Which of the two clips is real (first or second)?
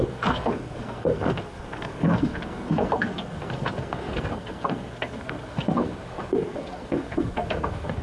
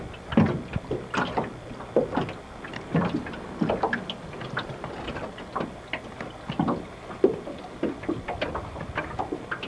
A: second